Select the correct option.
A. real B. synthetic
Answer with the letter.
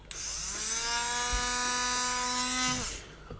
A